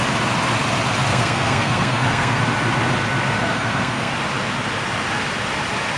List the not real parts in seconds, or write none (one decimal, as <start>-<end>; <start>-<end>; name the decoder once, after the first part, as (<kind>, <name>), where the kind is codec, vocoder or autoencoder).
1.1-2.4 (codec, SNAC); 3.5-4.1